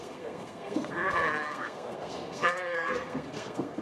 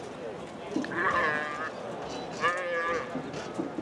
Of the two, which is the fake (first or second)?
first